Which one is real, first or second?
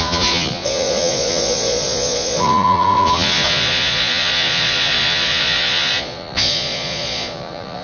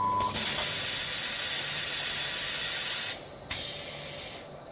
second